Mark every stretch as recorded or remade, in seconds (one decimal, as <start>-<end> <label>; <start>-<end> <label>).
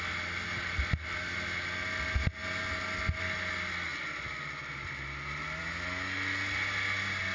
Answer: 0.0-7.3 recorded